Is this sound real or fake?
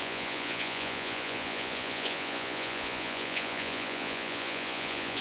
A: fake